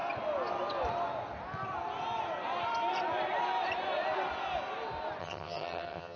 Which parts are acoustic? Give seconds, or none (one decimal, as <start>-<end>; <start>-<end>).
0.0-5.2